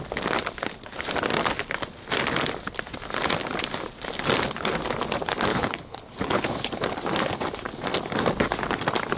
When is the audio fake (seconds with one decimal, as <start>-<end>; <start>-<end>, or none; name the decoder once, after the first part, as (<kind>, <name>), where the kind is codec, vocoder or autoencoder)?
5.5-6.7 (codec, HILCodec)